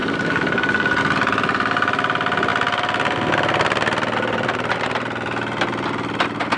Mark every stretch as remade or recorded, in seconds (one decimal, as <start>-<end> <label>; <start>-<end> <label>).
0.0-1.0 remade; 1.0-6.6 recorded